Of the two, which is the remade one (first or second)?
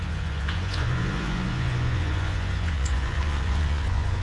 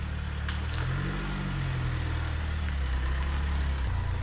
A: first